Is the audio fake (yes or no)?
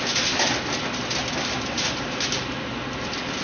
no